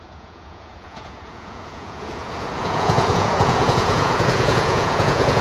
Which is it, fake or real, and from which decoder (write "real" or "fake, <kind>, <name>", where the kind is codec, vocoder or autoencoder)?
fake, vocoder, Vocos